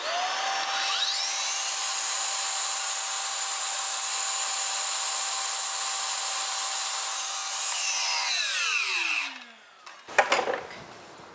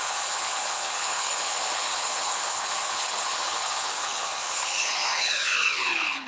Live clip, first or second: first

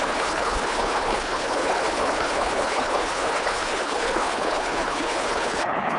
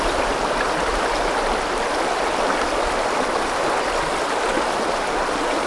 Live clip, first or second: second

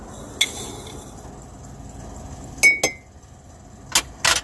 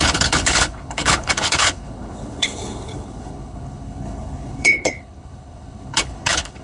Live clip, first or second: first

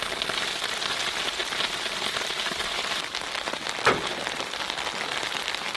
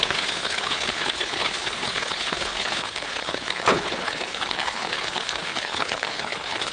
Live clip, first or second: first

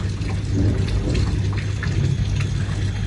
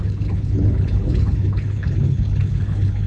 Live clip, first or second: first